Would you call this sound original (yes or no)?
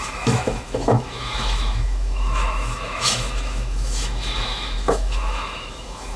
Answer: no